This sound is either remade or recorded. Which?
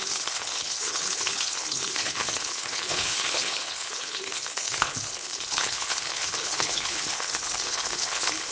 remade